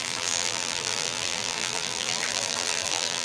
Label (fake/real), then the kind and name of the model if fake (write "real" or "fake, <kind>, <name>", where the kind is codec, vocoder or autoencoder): fake, vocoder, BigVGAN v2